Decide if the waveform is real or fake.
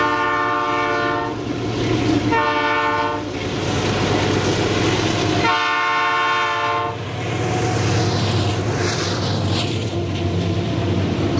real